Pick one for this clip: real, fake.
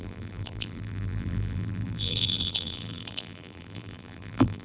fake